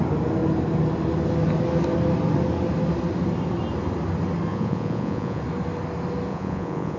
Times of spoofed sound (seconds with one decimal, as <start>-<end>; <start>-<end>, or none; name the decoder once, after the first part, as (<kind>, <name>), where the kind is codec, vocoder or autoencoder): 4.5-5.4 (vocoder, Vocos); 6.3-7.0